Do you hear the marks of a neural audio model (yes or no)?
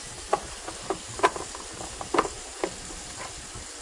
no